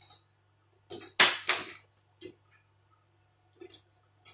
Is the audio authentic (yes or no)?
yes